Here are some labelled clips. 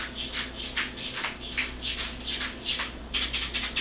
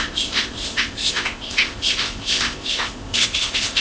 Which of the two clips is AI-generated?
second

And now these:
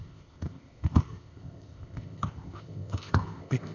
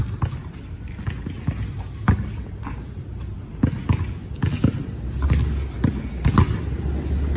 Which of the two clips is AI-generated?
first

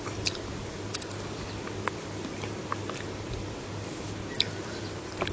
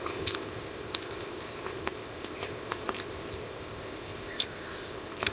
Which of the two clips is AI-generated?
second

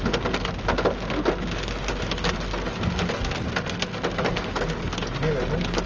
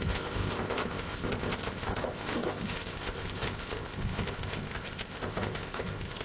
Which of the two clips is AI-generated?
second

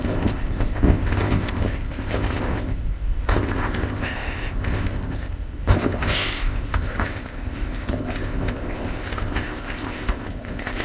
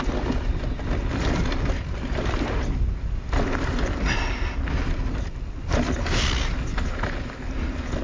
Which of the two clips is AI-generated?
first